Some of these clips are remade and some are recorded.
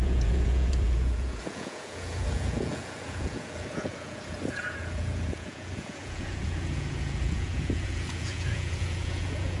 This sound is remade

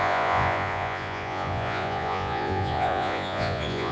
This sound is remade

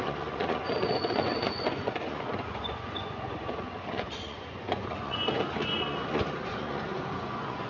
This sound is remade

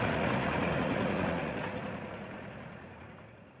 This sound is remade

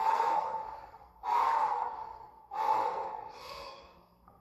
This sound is remade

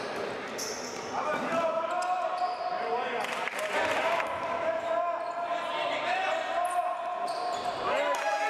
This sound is recorded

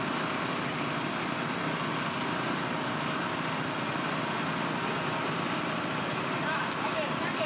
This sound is recorded